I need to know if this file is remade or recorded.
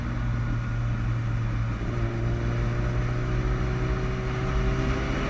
recorded